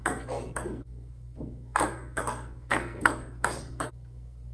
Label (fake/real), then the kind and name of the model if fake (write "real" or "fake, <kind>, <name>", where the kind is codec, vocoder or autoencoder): fake, codec, SNAC